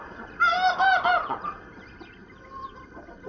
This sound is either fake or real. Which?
real